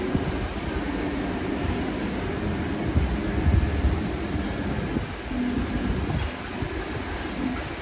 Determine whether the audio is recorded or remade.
recorded